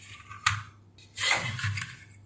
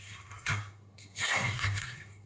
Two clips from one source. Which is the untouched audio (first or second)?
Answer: first